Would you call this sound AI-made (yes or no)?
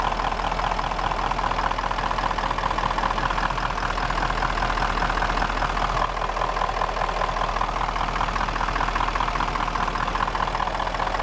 no